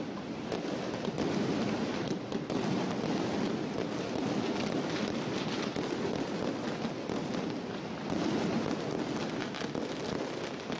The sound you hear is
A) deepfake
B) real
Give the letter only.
B